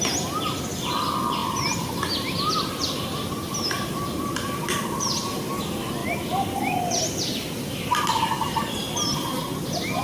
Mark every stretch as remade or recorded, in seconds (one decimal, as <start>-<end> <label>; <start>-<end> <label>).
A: 0.0-10.0 recorded